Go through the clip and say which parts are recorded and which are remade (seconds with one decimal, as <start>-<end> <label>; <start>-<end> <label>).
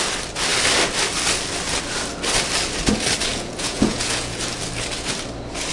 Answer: 0.0-3.3 recorded; 3.3-4.4 remade; 4.4-5.7 recorded